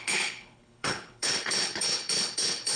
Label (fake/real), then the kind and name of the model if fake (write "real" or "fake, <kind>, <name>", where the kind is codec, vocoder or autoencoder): fake, codec, HILCodec